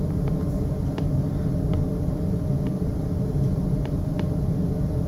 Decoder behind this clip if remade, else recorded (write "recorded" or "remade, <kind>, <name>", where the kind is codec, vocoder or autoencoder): recorded